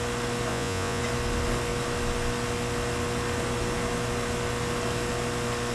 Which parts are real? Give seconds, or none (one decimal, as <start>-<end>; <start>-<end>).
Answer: 0.0-0.5; 1.0-5.7

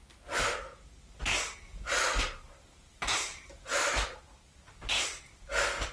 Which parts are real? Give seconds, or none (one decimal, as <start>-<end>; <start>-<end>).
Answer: 0.0-1.7; 4.2-5.9

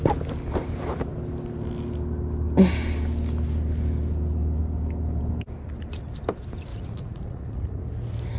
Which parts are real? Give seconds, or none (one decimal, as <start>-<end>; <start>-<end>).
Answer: 0.0-6.7; 7.8-8.4

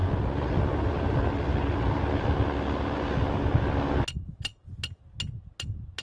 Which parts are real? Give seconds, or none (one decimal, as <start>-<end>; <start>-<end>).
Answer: 0.0-6.0

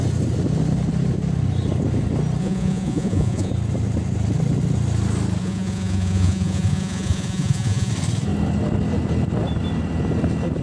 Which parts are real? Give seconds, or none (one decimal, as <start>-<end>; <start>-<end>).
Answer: 0.0-2.4; 3.5-5.4; 7.9-10.6

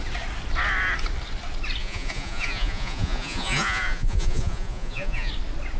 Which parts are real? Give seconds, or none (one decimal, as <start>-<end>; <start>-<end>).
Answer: 0.0-1.8; 5.3-5.8

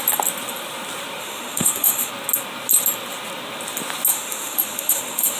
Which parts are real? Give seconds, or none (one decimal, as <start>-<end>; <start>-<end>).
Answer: 0.0-1.2; 2.1-4.1

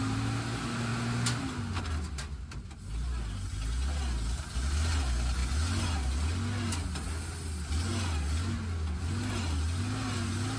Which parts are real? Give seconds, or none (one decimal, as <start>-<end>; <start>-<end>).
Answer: 0.0-10.6